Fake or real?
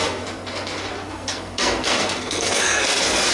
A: fake